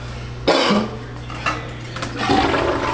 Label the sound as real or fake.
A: real